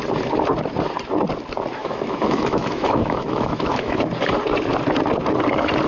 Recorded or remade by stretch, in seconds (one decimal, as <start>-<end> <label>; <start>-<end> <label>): 0.0-1.8 recorded; 1.8-4.1 remade; 4.1-5.9 recorded